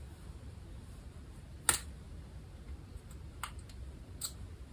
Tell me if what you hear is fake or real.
real